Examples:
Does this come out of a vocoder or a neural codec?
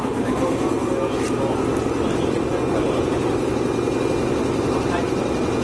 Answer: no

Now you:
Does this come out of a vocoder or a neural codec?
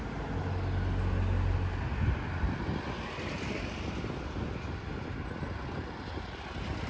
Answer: no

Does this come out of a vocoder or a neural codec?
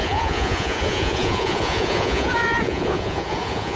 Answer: yes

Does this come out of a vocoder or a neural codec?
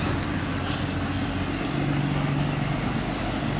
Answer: no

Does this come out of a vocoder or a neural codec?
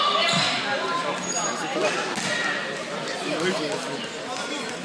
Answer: no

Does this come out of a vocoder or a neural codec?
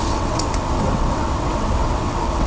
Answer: yes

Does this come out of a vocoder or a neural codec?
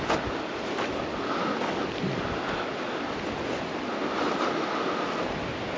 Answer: no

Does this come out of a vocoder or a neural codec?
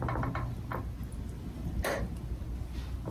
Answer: no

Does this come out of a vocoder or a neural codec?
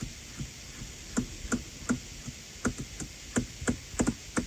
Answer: no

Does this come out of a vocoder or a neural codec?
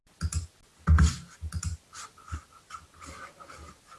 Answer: no